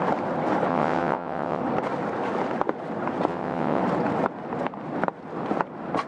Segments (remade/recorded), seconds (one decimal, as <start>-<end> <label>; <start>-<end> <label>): 0.0-0.7 recorded; 0.7-1.6 remade; 1.6-3.3 recorded; 3.3-3.8 remade; 3.8-6.1 recorded